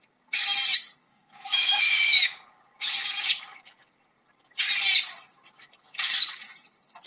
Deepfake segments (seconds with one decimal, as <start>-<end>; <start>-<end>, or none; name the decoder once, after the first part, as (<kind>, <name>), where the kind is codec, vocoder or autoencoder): 1.1-1.9 (autoencoder, DAC-VAE)